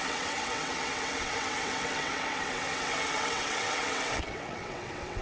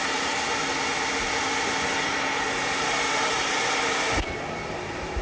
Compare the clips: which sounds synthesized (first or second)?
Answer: first